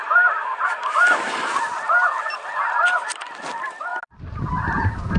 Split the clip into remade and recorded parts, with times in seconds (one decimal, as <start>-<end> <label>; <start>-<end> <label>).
0.0-5.2 recorded